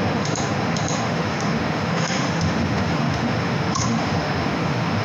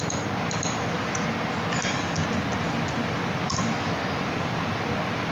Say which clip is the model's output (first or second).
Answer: first